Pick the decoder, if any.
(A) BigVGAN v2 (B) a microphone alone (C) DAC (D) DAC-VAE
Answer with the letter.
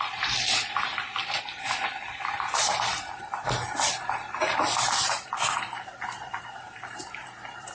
A